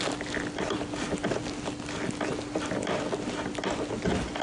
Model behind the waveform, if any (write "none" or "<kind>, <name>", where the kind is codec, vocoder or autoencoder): none